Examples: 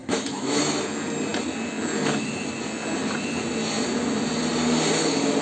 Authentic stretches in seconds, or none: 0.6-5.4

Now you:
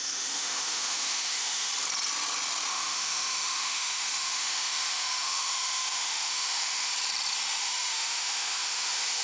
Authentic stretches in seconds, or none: 1.7-2.7; 6.9-7.6

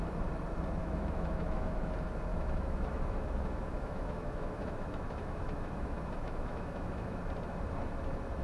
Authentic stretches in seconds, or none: 0.0-0.8; 1.9-2.3; 7.2-8.4

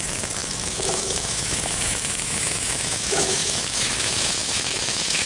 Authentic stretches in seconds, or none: none

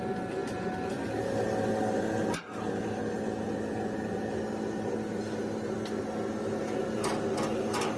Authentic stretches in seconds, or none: 0.0-8.0